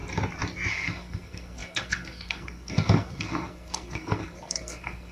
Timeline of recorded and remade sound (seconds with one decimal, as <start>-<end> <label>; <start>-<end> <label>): 0.0-0.7 recorded; 0.7-5.1 remade